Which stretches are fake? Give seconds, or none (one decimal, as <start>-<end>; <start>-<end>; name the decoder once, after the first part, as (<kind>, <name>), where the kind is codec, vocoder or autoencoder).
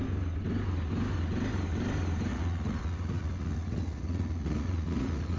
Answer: 2.3-5.4 (vocoder, Vocos)